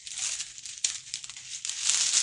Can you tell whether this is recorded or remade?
recorded